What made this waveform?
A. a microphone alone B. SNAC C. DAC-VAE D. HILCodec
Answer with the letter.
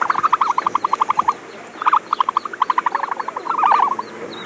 A